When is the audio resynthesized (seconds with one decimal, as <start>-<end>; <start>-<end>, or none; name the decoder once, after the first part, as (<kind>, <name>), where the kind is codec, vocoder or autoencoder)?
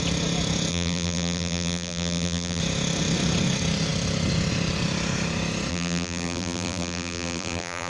0.7-2.6 (vocoder, BigVGAN v2); 5.7-7.9